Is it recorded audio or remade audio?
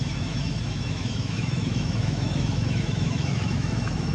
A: remade